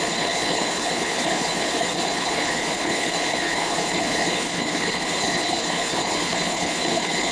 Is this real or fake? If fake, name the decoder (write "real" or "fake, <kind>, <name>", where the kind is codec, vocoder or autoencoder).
fake, codec, HILCodec